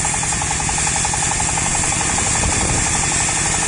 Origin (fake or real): real